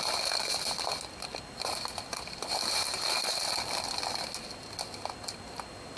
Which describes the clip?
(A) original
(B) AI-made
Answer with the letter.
A